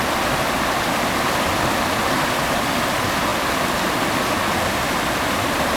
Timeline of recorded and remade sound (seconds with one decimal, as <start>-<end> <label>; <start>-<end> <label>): 0.0-5.8 recorded